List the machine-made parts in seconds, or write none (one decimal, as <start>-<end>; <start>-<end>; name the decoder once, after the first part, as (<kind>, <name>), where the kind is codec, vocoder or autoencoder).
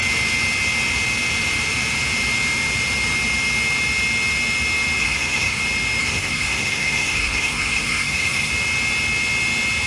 5.0-5.6 (codec, SNAC); 6.0-8.5